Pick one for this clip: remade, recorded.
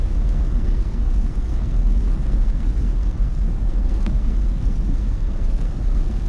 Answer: remade